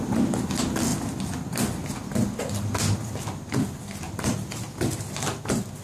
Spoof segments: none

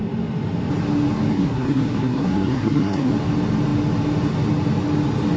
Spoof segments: 1.3-3.1

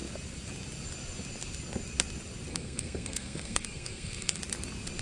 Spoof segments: 2.5-4.4

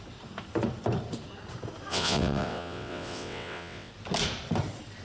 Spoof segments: 1.9-3.9